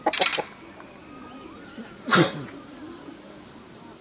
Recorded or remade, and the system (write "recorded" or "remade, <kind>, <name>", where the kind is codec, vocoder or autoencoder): recorded